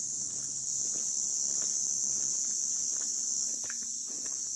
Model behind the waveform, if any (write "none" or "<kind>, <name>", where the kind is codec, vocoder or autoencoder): none